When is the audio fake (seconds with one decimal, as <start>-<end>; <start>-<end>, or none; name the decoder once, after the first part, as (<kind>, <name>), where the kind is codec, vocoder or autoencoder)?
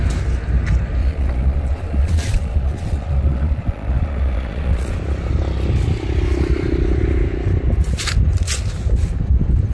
1.0-4.9 (vocoder, Vocos)